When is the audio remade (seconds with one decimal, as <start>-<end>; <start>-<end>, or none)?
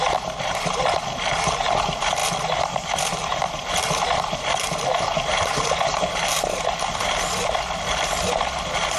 0.0-9.0